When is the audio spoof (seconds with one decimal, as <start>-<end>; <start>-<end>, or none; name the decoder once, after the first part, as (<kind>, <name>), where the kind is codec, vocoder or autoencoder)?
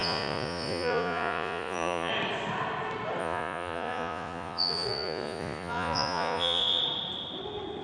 0.0-2.1 (vocoder, Vocos); 3.2-6.8